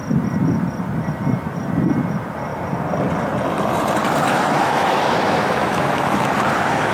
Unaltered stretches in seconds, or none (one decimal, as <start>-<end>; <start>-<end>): 0.0-4.3; 6.3-6.9